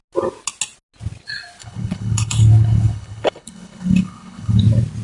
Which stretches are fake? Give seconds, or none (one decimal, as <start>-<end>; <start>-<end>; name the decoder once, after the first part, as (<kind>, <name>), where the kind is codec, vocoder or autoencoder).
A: 1.6-4.6 (codec, HILCodec)